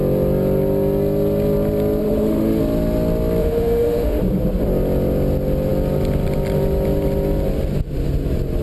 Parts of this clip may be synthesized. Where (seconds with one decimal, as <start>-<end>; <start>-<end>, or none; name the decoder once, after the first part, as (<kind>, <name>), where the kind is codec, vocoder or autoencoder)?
2.0-2.6 (autoencoder, DAC-VAE); 3.4-4.2